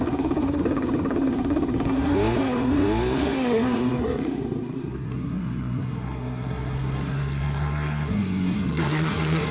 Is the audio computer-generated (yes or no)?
yes